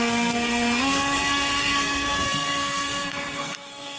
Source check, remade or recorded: remade